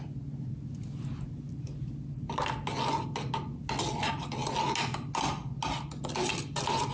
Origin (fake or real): real